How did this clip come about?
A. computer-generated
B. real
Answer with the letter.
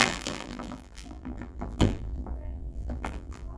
A